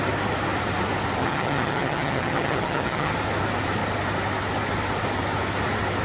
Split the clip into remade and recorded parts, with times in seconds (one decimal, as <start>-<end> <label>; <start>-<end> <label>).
0.0-1.2 recorded; 1.2-3.1 remade; 3.1-6.0 recorded

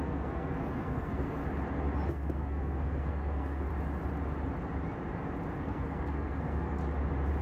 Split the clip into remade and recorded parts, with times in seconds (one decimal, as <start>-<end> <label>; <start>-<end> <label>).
0.0-1.4 remade; 1.4-2.1 recorded; 2.1-3.7 remade; 3.7-5.6 recorded; 5.6-6.8 remade; 6.8-7.4 recorded

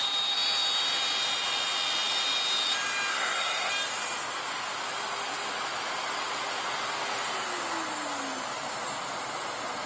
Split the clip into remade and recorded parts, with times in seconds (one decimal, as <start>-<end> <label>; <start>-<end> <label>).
0.0-3.1 recorded; 3.1-3.7 remade; 3.7-9.9 recorded

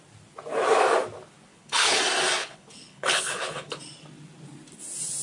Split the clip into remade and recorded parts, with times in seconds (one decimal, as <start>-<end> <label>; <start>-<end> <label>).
0.0-1.5 recorded; 1.5-2.0 remade; 2.0-2.4 recorded; 2.4-3.8 remade; 3.8-5.2 recorded

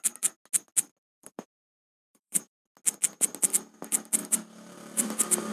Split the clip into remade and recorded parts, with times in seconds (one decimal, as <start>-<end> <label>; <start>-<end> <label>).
0.0-1.0 recorded; 1.0-2.5 remade; 2.5-4.2 recorded; 4.2-5.5 remade

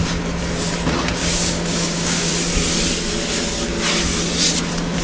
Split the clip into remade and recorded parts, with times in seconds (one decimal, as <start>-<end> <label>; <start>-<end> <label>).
0.0-1.2 recorded; 1.2-2.3 remade; 2.3-5.0 recorded

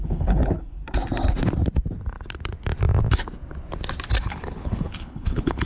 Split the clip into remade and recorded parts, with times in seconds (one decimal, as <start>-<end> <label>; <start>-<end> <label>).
0.0-0.8 remade; 0.8-4.2 recorded; 4.2-5.7 remade